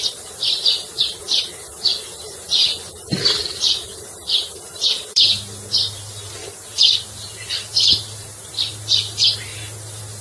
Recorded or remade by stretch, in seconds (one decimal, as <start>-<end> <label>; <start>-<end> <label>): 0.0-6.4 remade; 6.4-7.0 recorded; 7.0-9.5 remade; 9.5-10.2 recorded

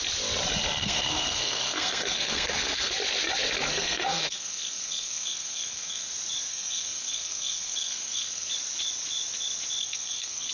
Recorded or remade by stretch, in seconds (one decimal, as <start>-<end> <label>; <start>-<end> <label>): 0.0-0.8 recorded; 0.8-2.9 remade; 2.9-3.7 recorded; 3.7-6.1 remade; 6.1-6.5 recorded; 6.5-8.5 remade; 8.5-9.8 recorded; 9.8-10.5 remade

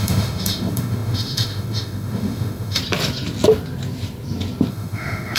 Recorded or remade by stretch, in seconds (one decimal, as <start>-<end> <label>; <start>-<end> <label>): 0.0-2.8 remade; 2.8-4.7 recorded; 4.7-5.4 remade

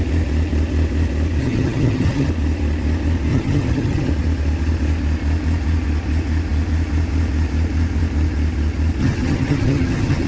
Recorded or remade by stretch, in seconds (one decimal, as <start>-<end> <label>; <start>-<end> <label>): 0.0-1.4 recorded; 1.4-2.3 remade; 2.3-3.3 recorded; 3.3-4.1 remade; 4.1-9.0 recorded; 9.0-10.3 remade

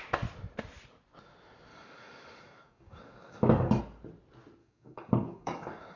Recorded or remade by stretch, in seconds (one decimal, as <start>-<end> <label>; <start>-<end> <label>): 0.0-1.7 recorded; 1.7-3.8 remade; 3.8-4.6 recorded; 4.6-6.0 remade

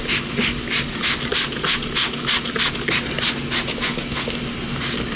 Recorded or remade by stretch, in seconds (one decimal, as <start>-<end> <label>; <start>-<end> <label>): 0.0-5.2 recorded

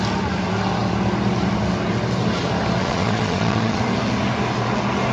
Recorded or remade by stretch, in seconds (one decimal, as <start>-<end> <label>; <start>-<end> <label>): 0.0-2.8 recorded; 2.8-3.8 remade; 3.8-5.1 recorded

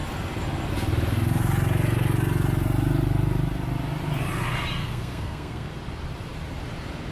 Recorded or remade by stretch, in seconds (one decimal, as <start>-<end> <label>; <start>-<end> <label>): 0.0-4.8 recorded; 4.8-5.7 remade; 5.7-7.1 recorded